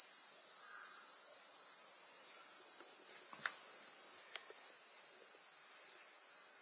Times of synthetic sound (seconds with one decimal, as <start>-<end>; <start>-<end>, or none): none